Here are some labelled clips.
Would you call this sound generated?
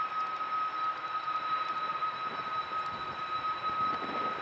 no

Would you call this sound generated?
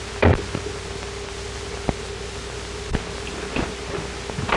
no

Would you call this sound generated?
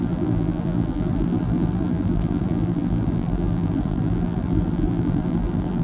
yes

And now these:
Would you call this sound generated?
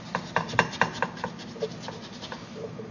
no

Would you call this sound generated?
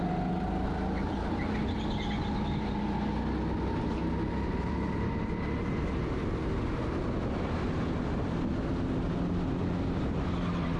no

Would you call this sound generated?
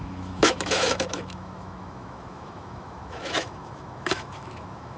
yes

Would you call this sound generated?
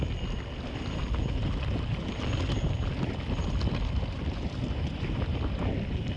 no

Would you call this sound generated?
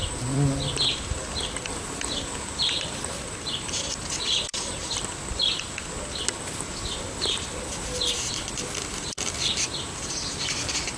no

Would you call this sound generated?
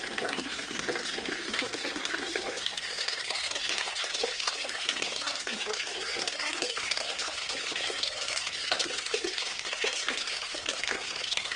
yes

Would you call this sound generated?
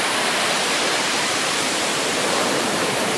yes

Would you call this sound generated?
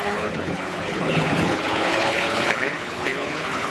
yes